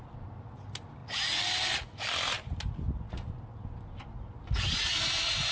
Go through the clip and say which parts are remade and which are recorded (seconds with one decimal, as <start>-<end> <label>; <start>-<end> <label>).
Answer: 0.0-5.5 recorded